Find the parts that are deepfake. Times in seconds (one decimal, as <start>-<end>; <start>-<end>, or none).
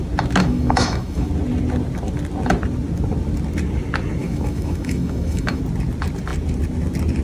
0.4-1.3; 4.2-5.6